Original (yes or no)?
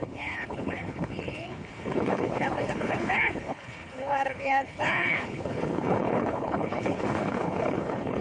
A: no